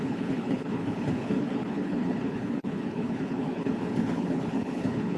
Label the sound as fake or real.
fake